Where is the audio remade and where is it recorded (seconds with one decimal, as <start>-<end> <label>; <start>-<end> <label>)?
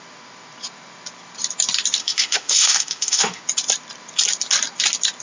0.0-2.0 recorded; 2.0-3.4 remade; 3.4-5.2 recorded